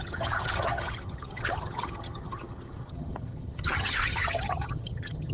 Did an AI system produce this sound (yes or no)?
yes